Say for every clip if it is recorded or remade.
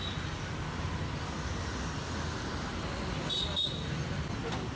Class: recorded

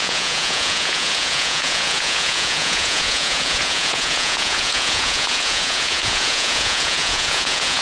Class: remade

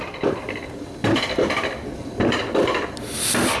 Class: recorded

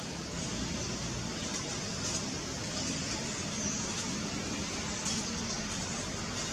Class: recorded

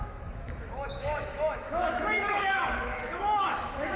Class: remade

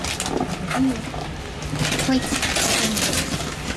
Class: recorded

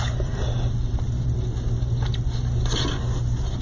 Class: recorded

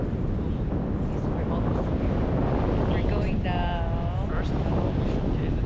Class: recorded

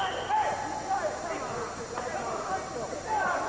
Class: recorded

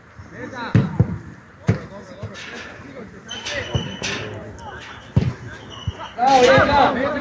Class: recorded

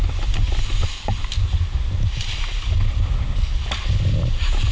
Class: recorded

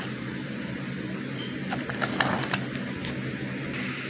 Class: recorded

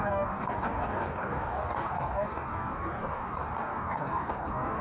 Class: remade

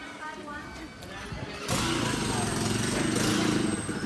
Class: recorded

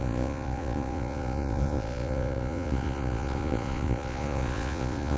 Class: remade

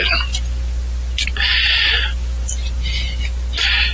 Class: recorded